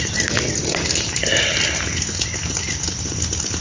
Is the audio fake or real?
real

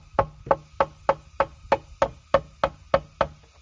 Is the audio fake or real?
real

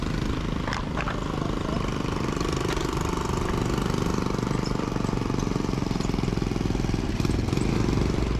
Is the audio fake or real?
real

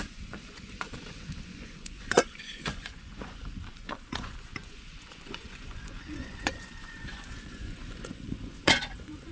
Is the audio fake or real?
fake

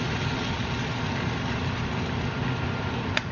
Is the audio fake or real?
real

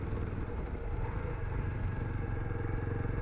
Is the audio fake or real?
real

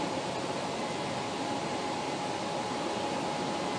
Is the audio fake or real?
real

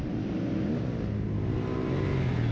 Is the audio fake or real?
real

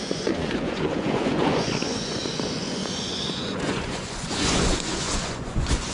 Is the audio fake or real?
fake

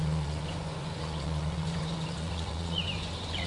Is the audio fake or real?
fake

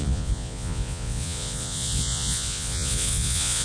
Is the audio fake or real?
fake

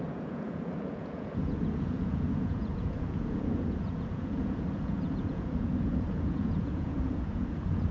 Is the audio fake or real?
fake